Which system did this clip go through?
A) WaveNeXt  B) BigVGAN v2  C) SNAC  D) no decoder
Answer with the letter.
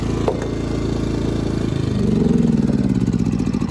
D